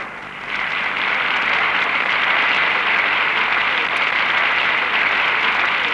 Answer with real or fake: real